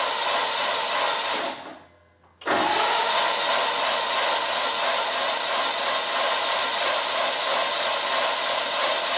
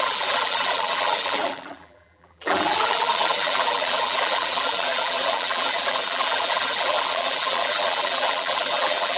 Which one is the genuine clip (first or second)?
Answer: first